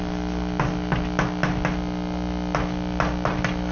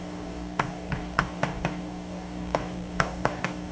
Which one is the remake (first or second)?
second